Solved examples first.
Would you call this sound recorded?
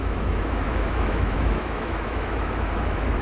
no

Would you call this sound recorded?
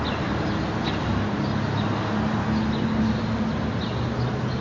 yes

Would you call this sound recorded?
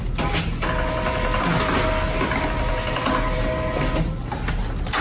yes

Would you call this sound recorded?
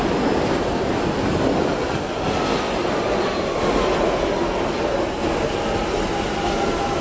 yes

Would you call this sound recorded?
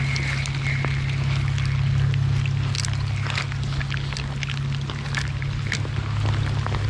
yes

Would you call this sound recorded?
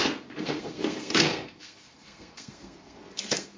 no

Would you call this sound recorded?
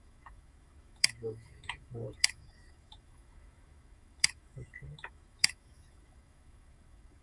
no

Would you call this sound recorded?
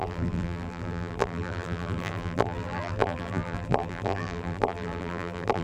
no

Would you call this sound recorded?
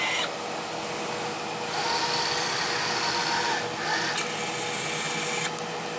yes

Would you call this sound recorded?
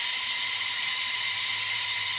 no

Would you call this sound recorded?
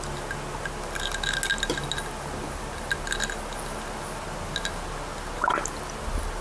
yes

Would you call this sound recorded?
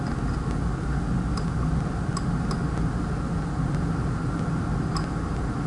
yes